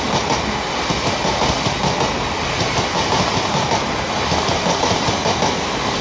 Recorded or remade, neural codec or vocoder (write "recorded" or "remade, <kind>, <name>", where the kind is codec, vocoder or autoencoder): recorded